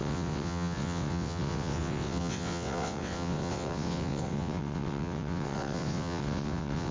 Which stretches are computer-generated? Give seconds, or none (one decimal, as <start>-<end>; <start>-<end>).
0.0-6.9